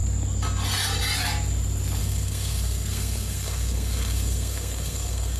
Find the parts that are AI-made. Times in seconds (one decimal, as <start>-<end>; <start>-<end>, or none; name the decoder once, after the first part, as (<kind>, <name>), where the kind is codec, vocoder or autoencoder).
2.0-5.4 (codec, SNAC)